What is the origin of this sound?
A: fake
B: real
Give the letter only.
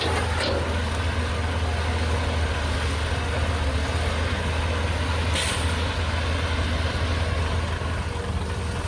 B